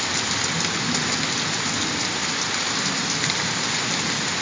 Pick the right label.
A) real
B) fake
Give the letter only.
A